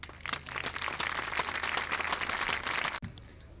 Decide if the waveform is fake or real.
real